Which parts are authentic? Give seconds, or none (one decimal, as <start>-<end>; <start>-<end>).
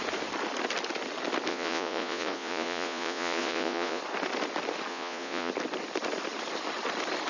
0.0-1.5; 4.0-4.9; 5.5-7.3